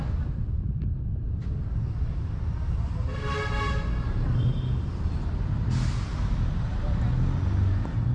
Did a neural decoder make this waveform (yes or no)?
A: no